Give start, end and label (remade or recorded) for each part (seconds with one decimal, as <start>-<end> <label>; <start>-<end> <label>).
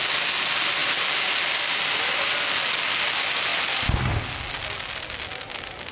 0.0-5.9 recorded